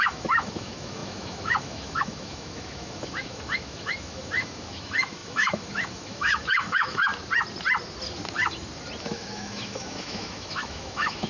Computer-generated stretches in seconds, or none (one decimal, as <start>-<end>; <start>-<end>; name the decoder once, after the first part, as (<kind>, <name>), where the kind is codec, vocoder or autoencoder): 0.0-7.1 (autoencoder, DAC-VAE); 9.0-11.3